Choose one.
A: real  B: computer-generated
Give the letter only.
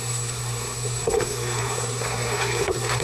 B